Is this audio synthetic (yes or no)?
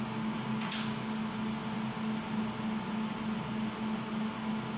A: no